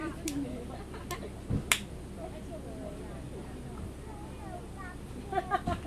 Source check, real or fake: real